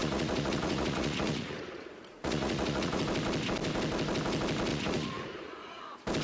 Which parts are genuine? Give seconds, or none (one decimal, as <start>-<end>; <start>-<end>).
3.0-4.7; 5.8-6.2